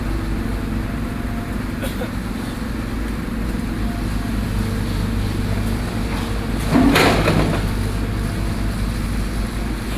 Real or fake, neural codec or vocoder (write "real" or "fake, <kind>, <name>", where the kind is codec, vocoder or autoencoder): real